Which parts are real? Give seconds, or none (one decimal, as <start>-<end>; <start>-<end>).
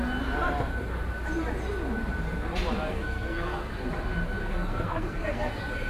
0.0-2.9; 3.7-4.4; 5.5-5.9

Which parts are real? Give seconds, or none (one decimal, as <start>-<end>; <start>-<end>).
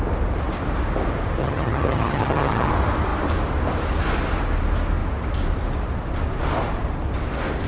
0.0-1.4; 2.7-7.7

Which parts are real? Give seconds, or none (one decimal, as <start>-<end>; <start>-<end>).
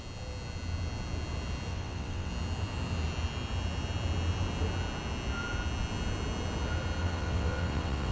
0.0-1.7; 2.3-7.0